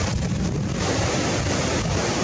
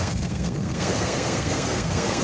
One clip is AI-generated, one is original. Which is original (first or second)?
first